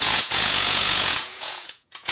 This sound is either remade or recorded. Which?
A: remade